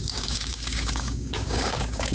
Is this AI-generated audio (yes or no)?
yes